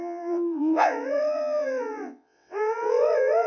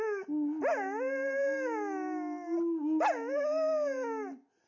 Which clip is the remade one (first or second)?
first